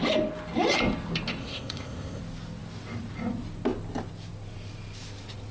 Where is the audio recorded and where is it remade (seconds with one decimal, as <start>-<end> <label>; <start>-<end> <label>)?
0.0-1.4 recorded; 1.4-2.2 remade; 2.2-5.5 recorded